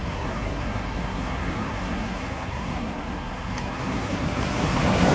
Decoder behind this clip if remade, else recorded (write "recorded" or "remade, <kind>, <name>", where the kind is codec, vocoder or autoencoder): remade, codec, SNAC